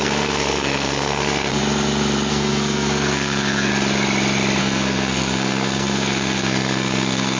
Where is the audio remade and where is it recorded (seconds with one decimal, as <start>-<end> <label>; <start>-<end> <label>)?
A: 0.0-1.6 remade; 1.6-2.3 recorded; 2.3-3.7 remade; 3.7-4.6 recorded; 4.6-7.4 remade